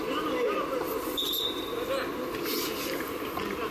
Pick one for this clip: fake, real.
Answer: real